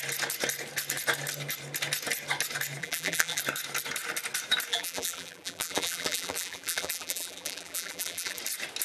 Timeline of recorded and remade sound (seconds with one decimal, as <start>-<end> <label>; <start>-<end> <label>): 0.0-2.8 recorded; 2.8-3.4 remade; 3.4-4.7 recorded; 4.7-8.4 remade; 8.4-8.8 recorded